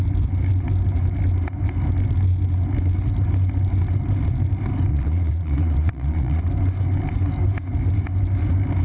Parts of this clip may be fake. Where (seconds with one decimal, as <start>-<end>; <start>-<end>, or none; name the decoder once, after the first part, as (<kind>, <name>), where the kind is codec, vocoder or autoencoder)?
4.9-6.4 (vocoder, Vocos)